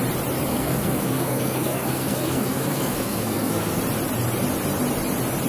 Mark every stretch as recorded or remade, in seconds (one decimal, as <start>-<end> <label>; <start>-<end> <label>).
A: 0.0-0.5 recorded; 0.5-3.8 remade; 3.8-5.5 recorded